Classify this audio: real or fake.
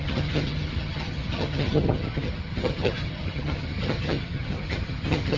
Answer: fake